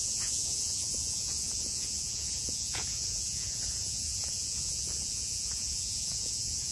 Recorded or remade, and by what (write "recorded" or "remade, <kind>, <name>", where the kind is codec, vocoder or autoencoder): remade, vocoder, Vocos